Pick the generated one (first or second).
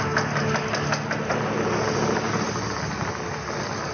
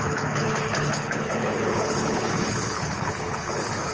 second